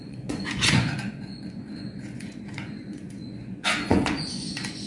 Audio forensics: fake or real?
fake